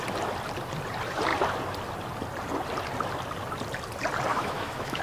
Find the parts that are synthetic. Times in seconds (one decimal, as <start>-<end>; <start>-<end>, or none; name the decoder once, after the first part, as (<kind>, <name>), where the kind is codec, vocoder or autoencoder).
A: 4.3-5.0 (autoencoder, DAC-VAE)

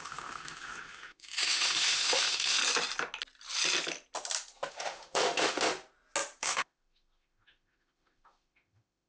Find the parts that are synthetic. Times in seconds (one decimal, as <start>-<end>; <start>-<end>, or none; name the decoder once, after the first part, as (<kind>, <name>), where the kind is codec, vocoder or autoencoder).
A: 0.0-2.6 (autoencoder, DAC-VAE); 4.7-5.7; 6.4-9.1